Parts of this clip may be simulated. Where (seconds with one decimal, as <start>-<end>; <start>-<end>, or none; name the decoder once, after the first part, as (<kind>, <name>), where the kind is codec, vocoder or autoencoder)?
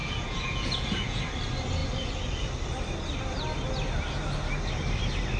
0.0-1.2 (vocoder, Vocos)